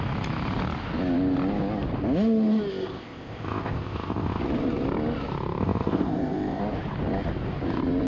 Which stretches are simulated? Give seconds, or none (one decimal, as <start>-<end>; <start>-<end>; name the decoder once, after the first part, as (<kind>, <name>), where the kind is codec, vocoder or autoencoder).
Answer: 2.7-4.4 (codec, ZipCodec); 5.6-6.6